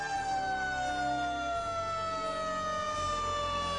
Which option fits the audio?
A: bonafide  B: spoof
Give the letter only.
A